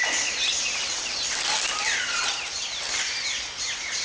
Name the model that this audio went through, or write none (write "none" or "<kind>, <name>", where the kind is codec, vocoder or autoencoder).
none